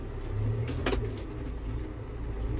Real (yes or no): yes